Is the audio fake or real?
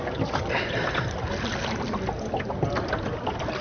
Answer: real